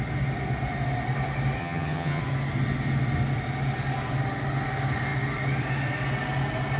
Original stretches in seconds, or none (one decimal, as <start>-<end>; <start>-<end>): 0.0-1.6; 2.2-6.8